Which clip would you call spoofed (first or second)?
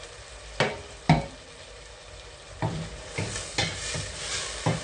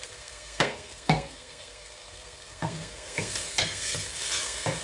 second